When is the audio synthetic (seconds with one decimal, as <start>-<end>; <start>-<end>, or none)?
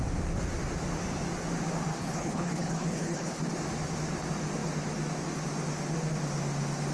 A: 1.9-3.4